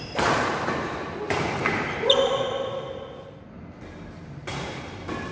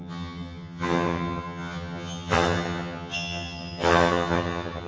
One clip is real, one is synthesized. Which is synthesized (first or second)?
second